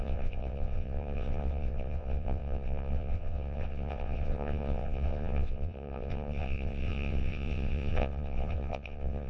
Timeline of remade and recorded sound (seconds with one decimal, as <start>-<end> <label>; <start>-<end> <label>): 0.0-9.3 remade